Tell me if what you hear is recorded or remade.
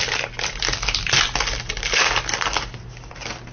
recorded